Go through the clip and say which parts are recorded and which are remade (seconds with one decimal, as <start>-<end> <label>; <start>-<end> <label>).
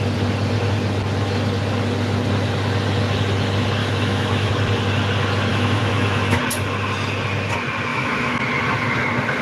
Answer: 0.0-3.8 recorded; 3.8-4.5 remade; 4.5-5.5 recorded; 5.5-6.4 remade; 6.4-7.9 recorded; 7.9-8.4 remade; 8.4-9.4 recorded